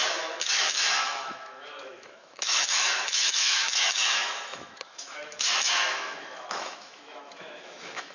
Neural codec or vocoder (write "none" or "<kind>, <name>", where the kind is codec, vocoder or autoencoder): autoencoder, DAC-VAE